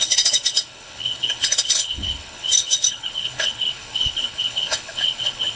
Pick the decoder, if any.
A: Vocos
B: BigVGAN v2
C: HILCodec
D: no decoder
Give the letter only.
C